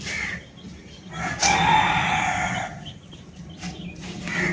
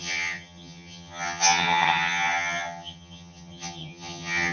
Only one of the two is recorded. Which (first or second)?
first